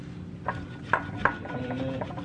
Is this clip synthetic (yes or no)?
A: no